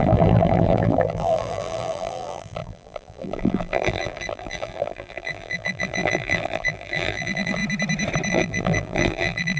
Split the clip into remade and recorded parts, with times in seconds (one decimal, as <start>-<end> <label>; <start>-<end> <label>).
0.0-7.6 remade; 7.6-8.3 recorded; 8.3-9.6 remade